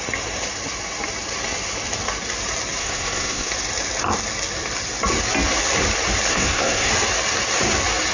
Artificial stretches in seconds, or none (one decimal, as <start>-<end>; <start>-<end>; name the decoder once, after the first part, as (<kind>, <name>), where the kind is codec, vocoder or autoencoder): 2.8-3.5 (codec, SNAC); 6.3-6.9